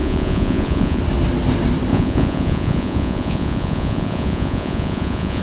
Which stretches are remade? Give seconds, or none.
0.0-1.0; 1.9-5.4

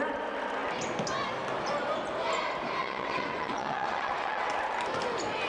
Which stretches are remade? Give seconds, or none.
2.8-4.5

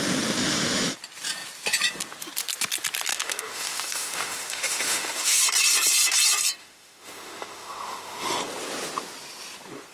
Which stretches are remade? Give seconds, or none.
3.1-5.4; 6.6-8.4

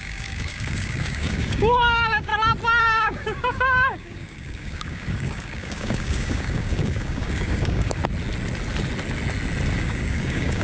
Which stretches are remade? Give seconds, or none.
0.0-2.3; 2.8-8.0; 9.8-10.6

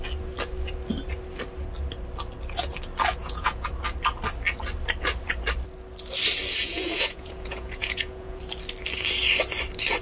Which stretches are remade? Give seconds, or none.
3.2-3.7; 6.6-8.4